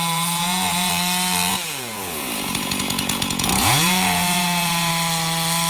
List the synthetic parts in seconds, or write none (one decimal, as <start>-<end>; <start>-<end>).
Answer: 0.0-0.9; 1.5-4.9